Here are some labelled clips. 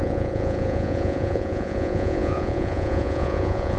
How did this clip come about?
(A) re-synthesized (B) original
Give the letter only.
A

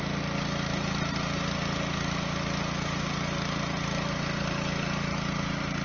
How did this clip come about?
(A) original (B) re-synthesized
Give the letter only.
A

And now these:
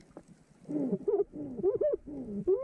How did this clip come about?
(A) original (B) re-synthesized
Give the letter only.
A